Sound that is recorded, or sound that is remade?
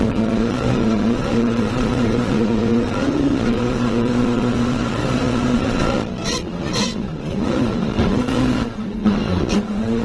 remade